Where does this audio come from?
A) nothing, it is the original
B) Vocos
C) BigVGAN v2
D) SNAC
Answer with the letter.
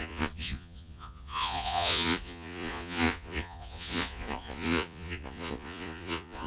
B